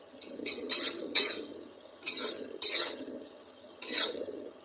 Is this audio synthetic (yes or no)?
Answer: yes